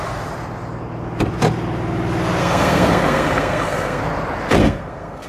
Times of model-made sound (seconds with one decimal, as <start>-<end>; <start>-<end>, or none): 2.4-4.0; 4.6-5.3